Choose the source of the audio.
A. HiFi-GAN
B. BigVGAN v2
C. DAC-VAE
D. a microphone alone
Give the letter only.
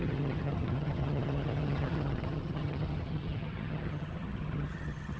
A